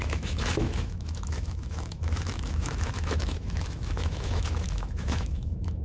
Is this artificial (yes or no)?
yes